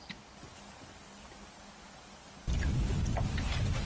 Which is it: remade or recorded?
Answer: recorded